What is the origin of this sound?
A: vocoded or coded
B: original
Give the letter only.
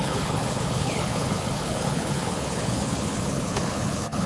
A